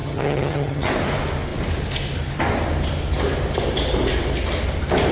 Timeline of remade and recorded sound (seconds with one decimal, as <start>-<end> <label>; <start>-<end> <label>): 0.0-0.9 remade; 0.9-5.1 recorded

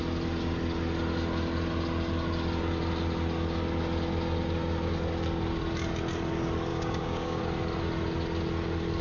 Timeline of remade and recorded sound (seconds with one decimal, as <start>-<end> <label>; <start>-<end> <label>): 0.0-6.7 recorded; 6.7-7.4 remade; 7.4-9.0 recorded

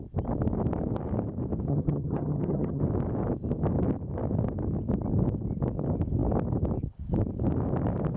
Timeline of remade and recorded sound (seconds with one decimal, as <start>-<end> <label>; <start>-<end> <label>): 0.0-1.7 recorded; 1.7-2.8 remade; 2.8-8.2 recorded

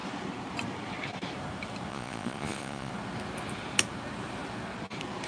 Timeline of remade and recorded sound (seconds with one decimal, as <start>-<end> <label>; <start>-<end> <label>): 0.0-1.9 recorded; 1.9-2.9 remade; 2.9-5.3 recorded